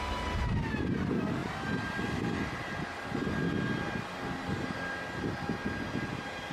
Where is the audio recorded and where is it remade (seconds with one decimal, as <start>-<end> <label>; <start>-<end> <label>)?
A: 0.0-6.5 recorded

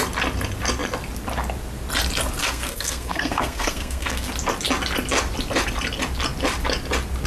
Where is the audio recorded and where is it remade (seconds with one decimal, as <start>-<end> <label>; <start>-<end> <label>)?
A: 0.0-2.4 recorded; 2.4-4.3 remade; 4.3-7.3 recorded

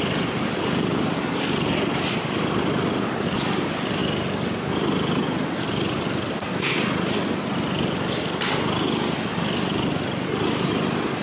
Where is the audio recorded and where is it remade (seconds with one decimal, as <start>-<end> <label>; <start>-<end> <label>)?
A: 0.0-11.2 recorded

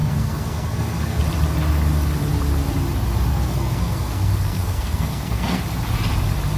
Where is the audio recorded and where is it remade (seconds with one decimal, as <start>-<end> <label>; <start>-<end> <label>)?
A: 0.0-1.2 remade; 1.2-3.3 recorded; 3.3-5.6 remade; 5.6-6.6 recorded